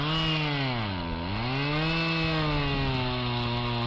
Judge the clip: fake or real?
real